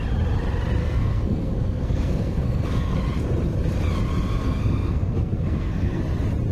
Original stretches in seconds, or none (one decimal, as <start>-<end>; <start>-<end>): 0.0-0.8; 3.0-4.4; 6.0-6.5